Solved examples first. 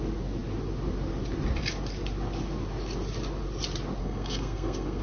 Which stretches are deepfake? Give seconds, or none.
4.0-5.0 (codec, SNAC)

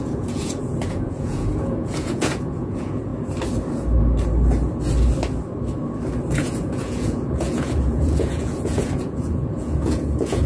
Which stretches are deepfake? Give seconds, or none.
0.0-3.1 (vocoder, Vocos); 6.3-10.5

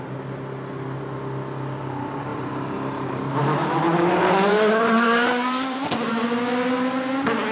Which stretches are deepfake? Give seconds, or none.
2.3-6.4 (vocoder, BigVGAN v2)

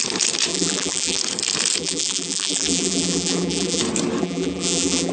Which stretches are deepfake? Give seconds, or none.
0.5-1.2 (vocoder, BigVGAN v2); 1.8-3.8; 4.2-5.1

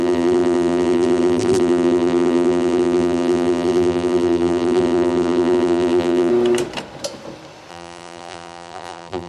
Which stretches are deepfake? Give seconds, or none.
0.0-6.3 (vocoder, BigVGAN v2); 7.7-9.3

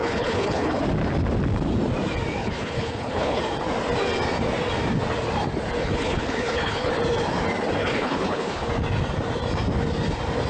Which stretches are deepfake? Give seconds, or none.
0.0-0.8 (codec, HILCodec); 2.4-3.4; 5.8-6.9; 7.8-8.7

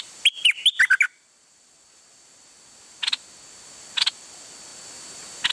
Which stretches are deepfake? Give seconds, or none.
none

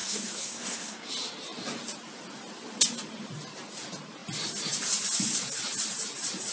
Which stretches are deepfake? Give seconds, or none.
0.0-1.1 (codec, SNAC)